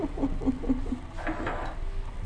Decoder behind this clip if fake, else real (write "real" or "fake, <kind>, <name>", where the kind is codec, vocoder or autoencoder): real